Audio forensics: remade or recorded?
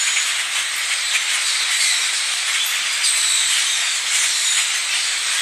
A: recorded